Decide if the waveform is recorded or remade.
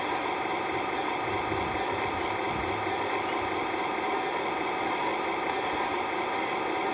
recorded